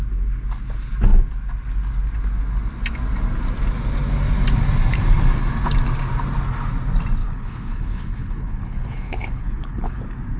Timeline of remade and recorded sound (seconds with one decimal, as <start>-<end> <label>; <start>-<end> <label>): 0.0-7.2 recorded; 7.2-10.0 remade; 10.0-10.4 recorded